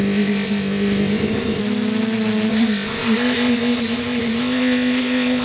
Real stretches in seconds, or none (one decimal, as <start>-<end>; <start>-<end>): 1.6-2.5